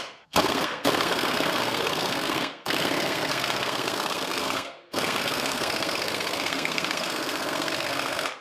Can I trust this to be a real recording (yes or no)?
no